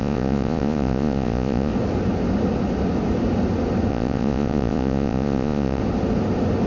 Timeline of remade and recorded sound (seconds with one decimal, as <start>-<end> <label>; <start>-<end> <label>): 0.0-1.7 remade; 1.7-3.9 recorded; 3.9-5.8 remade; 5.8-6.7 recorded